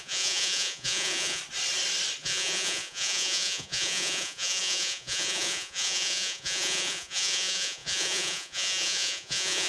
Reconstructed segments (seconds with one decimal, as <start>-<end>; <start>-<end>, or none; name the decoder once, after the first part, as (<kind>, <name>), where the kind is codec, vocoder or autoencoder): 0.0-1.4 (vocoder, Vocos); 2.2-9.7